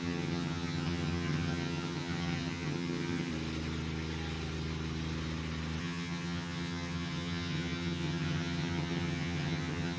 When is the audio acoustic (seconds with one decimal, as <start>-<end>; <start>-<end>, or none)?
3.3-5.8